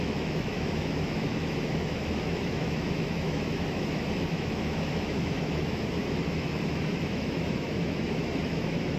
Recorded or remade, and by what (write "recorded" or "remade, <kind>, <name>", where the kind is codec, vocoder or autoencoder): remade, autoencoder, DAC-VAE